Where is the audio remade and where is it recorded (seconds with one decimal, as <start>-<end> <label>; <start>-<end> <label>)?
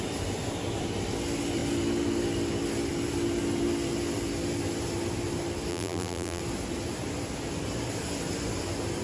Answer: 0.0-5.7 recorded; 5.7-6.4 remade; 6.4-9.0 recorded